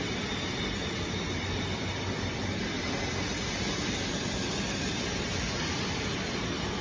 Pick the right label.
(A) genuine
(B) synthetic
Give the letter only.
A